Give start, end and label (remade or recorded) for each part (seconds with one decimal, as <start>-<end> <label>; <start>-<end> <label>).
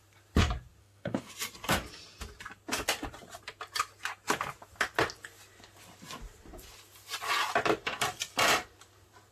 0.0-0.8 recorded; 0.8-1.3 remade; 1.3-9.3 recorded